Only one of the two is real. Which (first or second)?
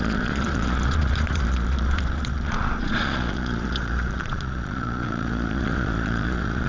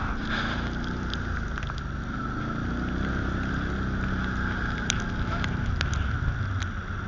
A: second